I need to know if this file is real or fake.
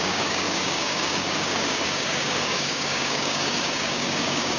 fake